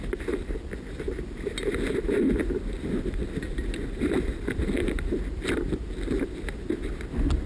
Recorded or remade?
recorded